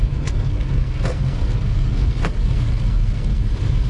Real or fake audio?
fake